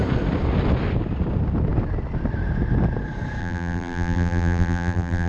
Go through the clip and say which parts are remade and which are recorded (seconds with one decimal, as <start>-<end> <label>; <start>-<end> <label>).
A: 0.0-3.4 recorded; 3.4-5.3 remade